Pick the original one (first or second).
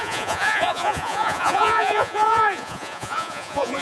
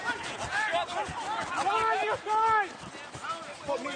second